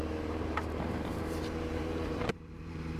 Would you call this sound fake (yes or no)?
yes